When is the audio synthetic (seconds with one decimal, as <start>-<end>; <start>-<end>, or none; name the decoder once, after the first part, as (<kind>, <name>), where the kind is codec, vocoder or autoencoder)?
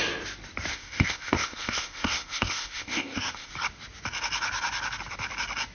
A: 0.7-3.5 (codec, ZipCodec)